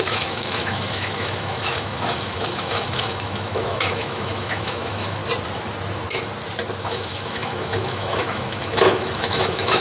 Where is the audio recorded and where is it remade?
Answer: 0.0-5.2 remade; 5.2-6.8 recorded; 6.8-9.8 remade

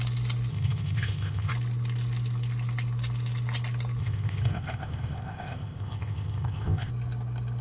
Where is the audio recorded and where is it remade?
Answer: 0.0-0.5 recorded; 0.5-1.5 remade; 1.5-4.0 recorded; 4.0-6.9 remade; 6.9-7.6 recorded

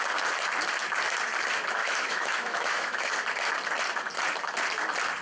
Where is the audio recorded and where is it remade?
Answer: 0.0-1.8 recorded; 1.8-3.1 remade; 3.1-5.2 recorded

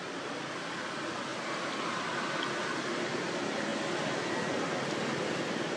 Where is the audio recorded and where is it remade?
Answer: 0.0-5.8 recorded

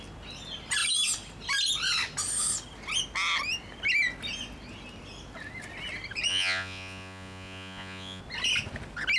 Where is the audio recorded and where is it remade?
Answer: 0.0-6.3 recorded; 6.3-8.2 remade; 8.2-9.2 recorded

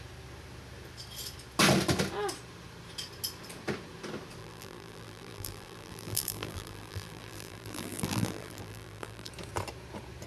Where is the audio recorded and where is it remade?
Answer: 0.0-4.4 recorded; 4.4-9.3 remade; 9.3-10.3 recorded